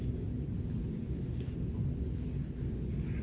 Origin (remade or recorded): recorded